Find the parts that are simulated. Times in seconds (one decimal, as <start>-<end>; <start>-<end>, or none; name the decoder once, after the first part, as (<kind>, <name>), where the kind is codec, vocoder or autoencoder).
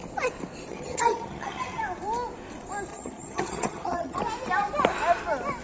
0.7-1.8 (vocoder, HiFi-GAN); 2.9-4.2